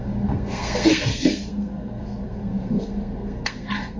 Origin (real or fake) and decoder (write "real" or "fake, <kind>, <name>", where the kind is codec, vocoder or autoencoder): fake, codec, SNAC